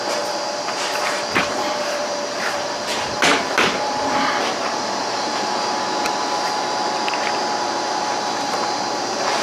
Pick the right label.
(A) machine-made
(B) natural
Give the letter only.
A